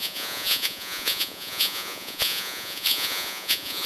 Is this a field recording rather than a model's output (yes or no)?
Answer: no